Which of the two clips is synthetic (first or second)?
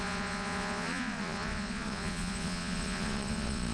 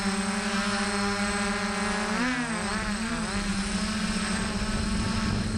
first